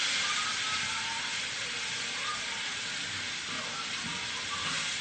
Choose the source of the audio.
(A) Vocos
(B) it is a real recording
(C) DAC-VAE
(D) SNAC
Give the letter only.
B